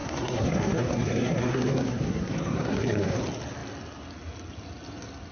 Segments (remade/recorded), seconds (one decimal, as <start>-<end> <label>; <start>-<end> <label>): 0.0-3.2 remade; 3.2-5.3 recorded